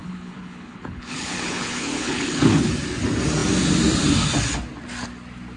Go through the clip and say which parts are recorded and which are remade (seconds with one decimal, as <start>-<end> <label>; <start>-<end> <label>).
0.0-2.7 remade; 2.7-5.6 recorded